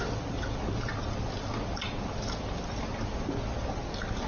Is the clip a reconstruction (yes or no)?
no